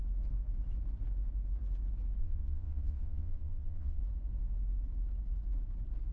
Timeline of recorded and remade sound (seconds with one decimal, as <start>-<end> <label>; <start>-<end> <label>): 0.0-2.2 recorded; 2.2-4.0 remade; 4.0-6.1 recorded